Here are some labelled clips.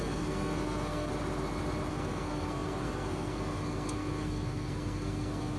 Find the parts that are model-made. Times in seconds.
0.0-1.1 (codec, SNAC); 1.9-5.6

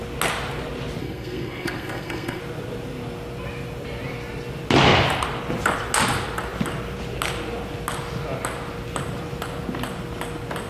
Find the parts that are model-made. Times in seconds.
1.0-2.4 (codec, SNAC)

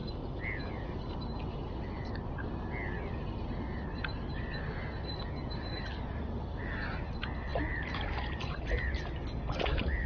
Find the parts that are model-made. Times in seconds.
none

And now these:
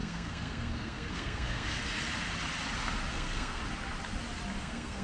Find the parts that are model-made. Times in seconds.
0.0-1.8 (codec, SNAC); 3.1-3.6; 4.6-5.0

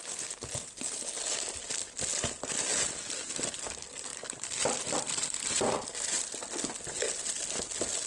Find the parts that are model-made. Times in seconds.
none